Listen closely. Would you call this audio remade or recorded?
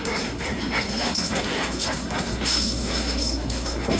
remade